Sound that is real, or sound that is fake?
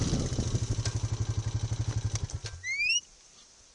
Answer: real